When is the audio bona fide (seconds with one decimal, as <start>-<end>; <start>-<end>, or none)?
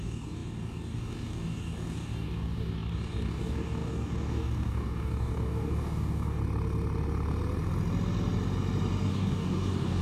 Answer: 6.4-9.1